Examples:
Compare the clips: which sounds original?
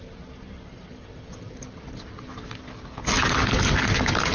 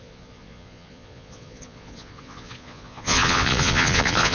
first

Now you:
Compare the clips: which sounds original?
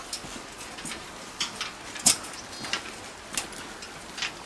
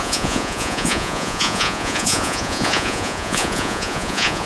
first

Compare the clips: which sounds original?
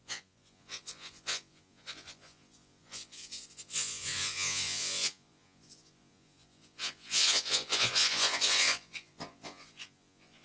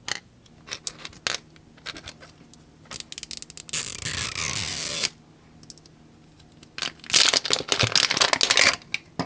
second